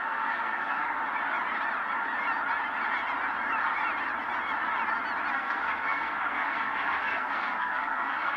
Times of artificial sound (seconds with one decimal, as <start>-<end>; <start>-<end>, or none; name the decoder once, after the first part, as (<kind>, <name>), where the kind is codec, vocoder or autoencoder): 0.0-1.0 (codec, SNAC); 5.3-8.4

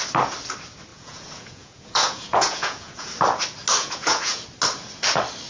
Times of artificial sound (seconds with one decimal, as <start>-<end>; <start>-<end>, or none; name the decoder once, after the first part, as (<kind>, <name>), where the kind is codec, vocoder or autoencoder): 0.9-3.1 (vocoder, Vocos); 3.8-4.4

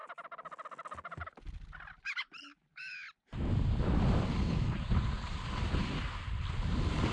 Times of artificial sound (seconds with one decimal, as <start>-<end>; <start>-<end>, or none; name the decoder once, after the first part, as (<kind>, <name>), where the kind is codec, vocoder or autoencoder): none

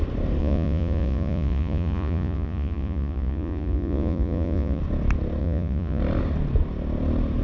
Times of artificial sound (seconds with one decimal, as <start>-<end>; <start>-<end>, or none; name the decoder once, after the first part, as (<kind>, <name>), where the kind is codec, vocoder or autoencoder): 0.4-4.8 (vocoder, Vocos); 5.4-6.0

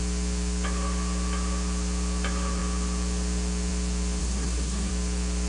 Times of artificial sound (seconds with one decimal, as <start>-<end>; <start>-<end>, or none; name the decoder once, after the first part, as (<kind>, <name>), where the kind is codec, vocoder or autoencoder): 4.2-4.9 (codec, SNAC)